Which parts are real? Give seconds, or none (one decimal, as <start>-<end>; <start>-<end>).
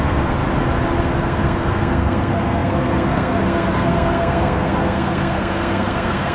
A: 0.4-1.0